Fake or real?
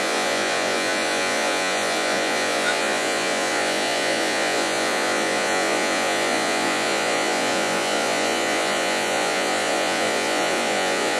fake